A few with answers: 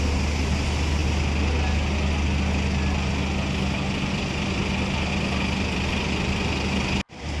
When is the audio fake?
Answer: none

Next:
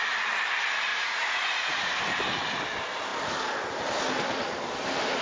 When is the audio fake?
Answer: 0.9-1.9 (vocoder, Vocos)

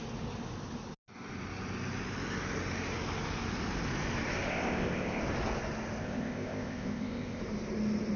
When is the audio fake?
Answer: 4.5-5.2 (codec, ZipCodec); 6.0-7.4

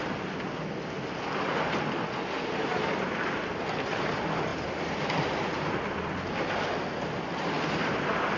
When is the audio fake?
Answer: 4.5-6.1 (vocoder, BigVGAN v2)

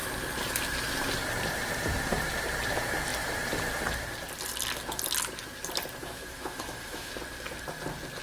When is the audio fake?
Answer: 6.0-7.1 (autoencoder, DAC-VAE)

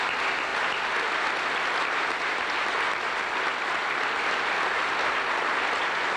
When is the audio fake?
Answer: none

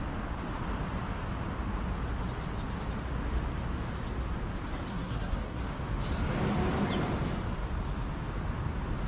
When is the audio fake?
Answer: 4.9-5.6 (codec, SNAC)

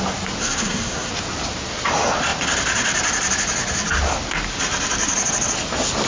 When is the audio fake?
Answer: 0.4-1.1 (codec, SNAC)